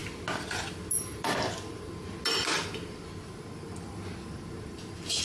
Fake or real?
real